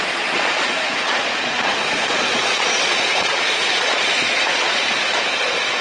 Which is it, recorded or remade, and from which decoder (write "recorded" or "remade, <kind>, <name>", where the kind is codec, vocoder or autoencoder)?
remade, vocoder, Vocos